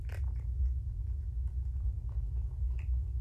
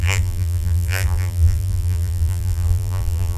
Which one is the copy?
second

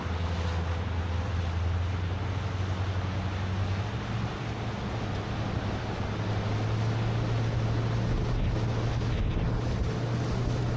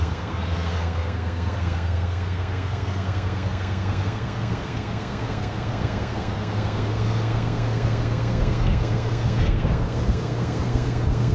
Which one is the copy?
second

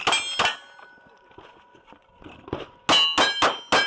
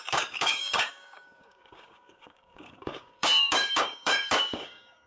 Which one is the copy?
second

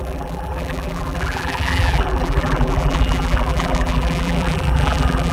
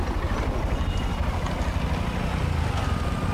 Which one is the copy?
first